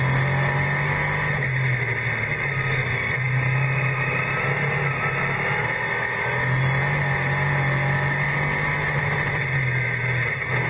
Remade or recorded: recorded